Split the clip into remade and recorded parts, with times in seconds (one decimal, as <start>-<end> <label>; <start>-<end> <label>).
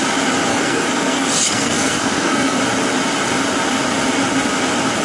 0.0-0.5 recorded; 0.5-2.6 remade; 2.6-5.0 recorded